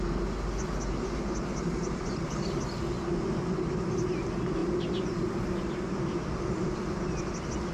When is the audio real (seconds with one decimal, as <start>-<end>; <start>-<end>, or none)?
0.0-7.7